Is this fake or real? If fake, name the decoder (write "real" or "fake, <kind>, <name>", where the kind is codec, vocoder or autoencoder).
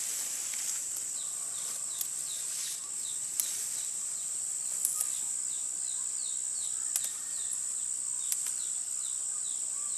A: real